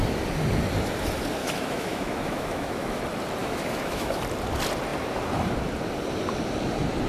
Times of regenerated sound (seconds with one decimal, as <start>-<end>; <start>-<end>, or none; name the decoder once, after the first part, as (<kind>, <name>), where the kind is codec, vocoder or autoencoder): 1.4-3.0 (autoencoder, DAC-VAE); 3.4-4.2